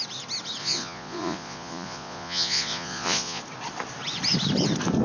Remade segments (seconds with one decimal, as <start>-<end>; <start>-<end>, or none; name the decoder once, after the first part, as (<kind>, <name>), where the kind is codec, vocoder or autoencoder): 0.6-3.4 (vocoder, Vocos)